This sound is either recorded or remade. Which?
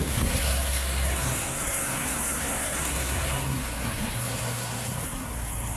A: remade